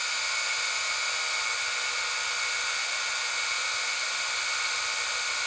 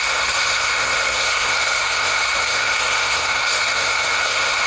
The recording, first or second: first